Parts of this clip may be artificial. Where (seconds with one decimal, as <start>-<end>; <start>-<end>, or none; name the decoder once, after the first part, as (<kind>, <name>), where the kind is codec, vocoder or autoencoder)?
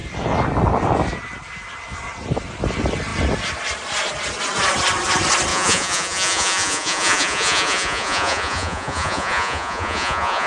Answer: 5.5-10.5 (vocoder, Vocos)